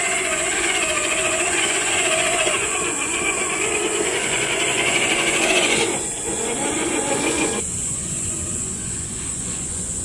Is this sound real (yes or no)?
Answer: no